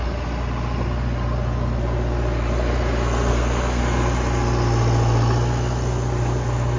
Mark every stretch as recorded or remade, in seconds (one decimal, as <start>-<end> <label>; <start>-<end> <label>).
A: 0.0-3.3 recorded; 3.3-3.8 remade; 3.8-6.8 recorded